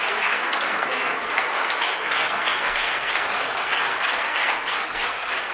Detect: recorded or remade remade